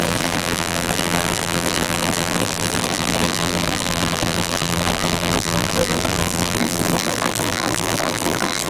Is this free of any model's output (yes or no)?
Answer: no